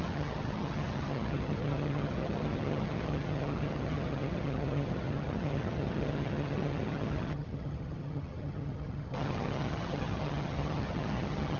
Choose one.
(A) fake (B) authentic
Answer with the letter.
A